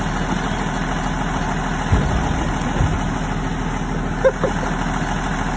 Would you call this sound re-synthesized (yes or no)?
no